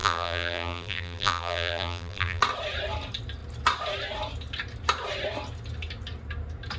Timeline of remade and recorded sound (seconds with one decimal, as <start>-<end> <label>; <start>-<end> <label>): 0.0-2.4 remade; 2.4-6.8 recorded